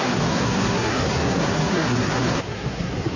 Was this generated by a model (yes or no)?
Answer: yes